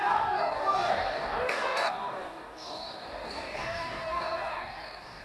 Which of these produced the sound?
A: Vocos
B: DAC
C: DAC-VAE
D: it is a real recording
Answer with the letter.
B